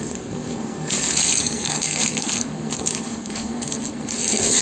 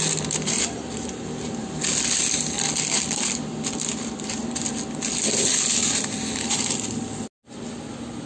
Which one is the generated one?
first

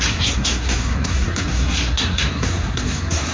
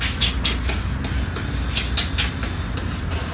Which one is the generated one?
first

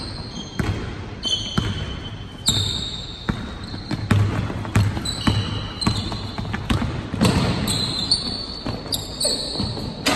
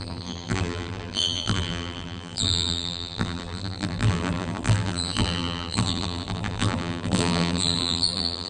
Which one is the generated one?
second